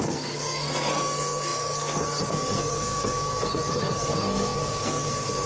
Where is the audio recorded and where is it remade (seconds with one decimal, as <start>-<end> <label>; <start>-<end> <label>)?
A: 0.0-5.5 remade